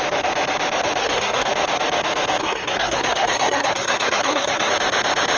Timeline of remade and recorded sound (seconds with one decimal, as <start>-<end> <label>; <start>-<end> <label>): 0.0-1.0 recorded; 1.0-1.5 remade; 1.5-2.4 recorded; 2.4-4.7 remade; 4.7-5.4 recorded